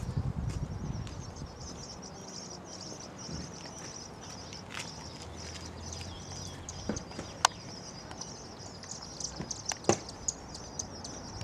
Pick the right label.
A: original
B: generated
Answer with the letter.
A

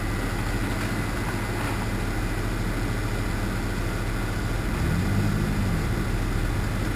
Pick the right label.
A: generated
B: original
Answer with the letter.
B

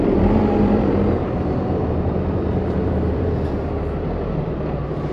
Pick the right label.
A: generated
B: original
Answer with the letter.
A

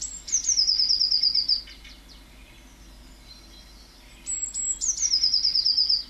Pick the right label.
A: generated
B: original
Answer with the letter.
B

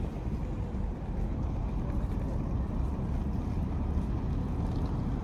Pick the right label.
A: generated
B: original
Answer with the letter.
B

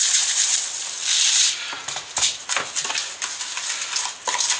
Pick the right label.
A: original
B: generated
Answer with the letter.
A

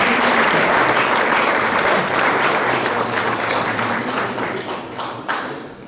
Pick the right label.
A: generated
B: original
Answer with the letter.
A